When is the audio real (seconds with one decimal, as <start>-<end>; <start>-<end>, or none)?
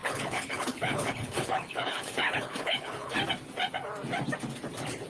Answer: 3.1-5.1